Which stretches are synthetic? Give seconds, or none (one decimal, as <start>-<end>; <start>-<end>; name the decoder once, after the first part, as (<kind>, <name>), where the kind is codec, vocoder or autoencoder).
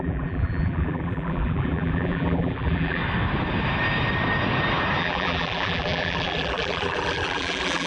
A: 0.0-3.0 (vocoder, BigVGAN v2); 5.0-7.9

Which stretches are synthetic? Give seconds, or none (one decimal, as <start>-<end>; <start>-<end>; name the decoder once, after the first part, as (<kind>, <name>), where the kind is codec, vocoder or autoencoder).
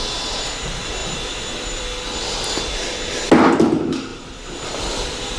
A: 1.0-1.8 (vocoder, BigVGAN v2); 4.1-5.4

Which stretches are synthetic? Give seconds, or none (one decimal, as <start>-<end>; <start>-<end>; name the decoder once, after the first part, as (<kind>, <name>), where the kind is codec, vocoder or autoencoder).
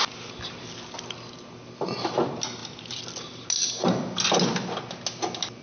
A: none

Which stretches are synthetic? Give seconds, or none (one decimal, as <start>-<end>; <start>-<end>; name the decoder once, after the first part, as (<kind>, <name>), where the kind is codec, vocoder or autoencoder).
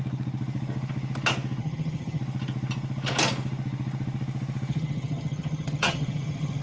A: 1.6-2.2 (vocoder, HiFi-GAN); 4.7-6.6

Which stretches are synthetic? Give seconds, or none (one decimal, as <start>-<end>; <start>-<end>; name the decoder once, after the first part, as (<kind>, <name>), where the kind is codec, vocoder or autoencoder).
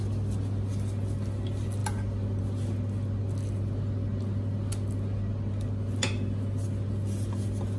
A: none